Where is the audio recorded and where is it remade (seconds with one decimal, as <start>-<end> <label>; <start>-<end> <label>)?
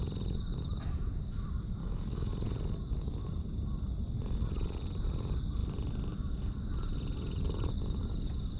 0.0-1.8 recorded; 1.8-2.3 remade; 2.3-8.6 recorded